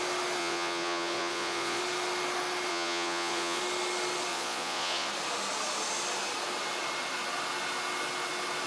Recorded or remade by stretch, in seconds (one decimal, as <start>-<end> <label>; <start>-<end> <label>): 0.0-0.4 recorded; 0.4-1.8 remade; 1.8-2.7 recorded; 2.7-3.6 remade; 3.6-4.3 recorded; 4.3-5.1 remade; 5.1-8.7 recorded

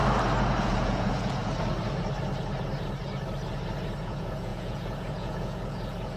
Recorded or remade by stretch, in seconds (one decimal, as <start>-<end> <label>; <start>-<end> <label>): 0.0-0.6 recorded; 0.6-1.4 remade; 1.4-4.0 recorded; 4.0-6.2 remade

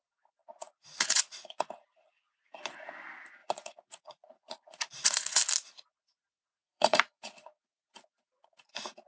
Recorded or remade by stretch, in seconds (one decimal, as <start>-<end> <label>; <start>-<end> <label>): 0.0-0.4 recorded; 0.4-2.9 remade; 2.9-3.4 recorded; 3.4-5.4 remade; 5.4-6.5 recorded; 6.5-8.7 remade; 8.7-9.1 recorded

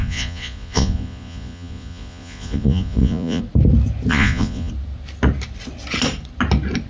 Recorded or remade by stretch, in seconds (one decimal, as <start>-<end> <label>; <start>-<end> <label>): 0.0-3.4 remade; 3.4-4.1 recorded; 4.1-4.7 remade; 4.7-6.9 recorded

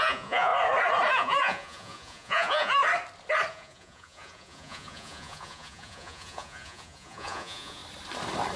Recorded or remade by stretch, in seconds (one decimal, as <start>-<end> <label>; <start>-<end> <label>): 0.0-0.5 remade; 0.5-1.1 recorded; 1.1-2.8 remade; 2.8-3.5 recorded; 3.5-7.8 remade; 7.8-8.6 recorded

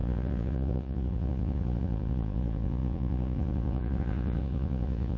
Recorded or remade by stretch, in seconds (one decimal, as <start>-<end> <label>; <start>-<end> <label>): 0.0-5.2 remade